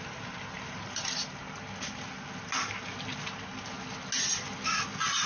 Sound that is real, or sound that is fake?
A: real